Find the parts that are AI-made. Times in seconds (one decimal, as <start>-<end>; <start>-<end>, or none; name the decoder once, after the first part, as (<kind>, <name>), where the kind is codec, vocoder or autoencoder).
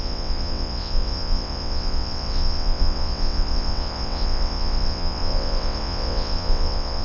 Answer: 0.0-7.0 (vocoder, WaveNeXt)